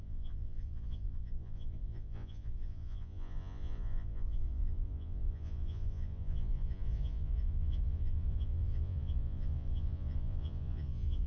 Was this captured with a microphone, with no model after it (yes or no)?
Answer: no